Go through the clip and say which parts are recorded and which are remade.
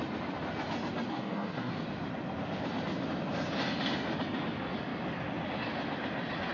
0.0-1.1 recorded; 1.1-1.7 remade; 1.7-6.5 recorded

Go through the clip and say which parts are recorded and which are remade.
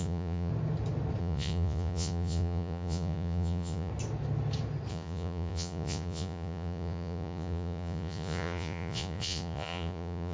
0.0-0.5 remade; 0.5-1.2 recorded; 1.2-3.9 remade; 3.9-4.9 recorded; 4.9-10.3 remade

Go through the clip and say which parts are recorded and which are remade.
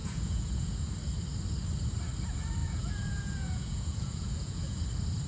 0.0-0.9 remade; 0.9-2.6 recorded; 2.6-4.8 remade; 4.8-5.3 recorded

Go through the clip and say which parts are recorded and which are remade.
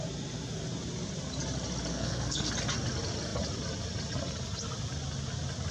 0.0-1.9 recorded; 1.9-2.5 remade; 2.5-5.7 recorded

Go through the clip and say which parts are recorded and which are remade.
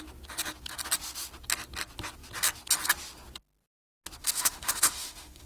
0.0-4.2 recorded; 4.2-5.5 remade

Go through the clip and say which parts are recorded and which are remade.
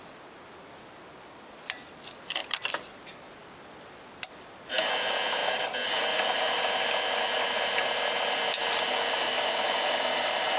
0.0-10.6 recorded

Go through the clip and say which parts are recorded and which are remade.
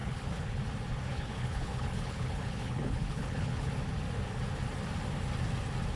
0.0-0.6 remade; 0.6-1.1 recorded; 1.1-3.7 remade; 3.7-6.0 recorded